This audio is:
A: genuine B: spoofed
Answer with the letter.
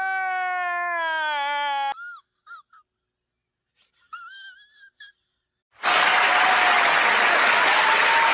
A